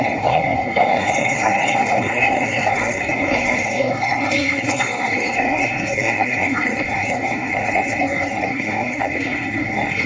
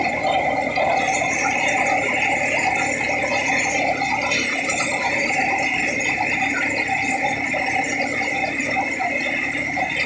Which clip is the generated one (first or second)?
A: first